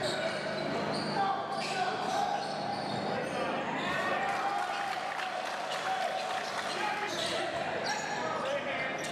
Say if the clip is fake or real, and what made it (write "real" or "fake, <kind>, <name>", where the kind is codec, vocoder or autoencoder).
real